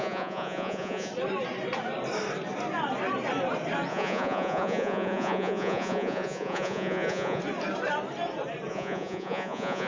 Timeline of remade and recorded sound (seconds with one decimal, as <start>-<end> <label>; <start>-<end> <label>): 0.0-1.1 remade; 1.1-3.9 recorded; 3.9-7.4 remade; 7.4-8.7 recorded; 8.7-9.9 remade